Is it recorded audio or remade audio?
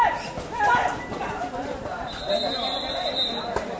recorded